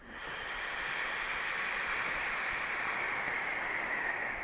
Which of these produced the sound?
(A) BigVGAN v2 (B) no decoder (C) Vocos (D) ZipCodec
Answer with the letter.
A